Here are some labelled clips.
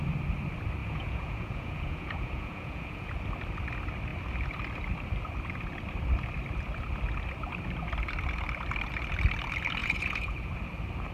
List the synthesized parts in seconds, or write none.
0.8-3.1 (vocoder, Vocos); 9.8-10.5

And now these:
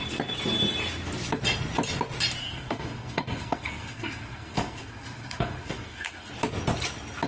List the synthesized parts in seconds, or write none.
2.4-6.3 (codec, SNAC)